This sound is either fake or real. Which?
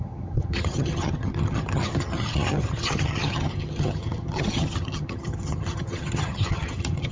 fake